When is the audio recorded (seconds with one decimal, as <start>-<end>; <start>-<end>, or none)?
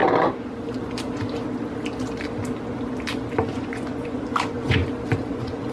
0.0-3.4; 4.8-5.3